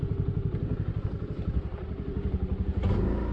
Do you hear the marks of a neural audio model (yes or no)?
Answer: no